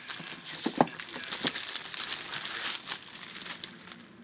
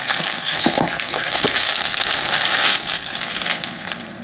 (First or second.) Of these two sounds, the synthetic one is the second